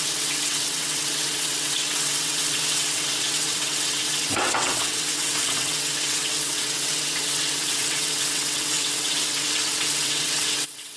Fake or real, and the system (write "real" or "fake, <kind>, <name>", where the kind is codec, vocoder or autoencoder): fake, vocoder, WaveNeXt